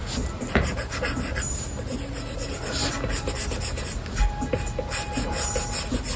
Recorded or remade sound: recorded